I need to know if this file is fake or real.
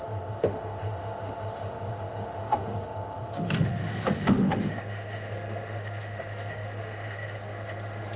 fake